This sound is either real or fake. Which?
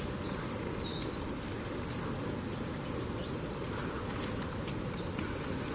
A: real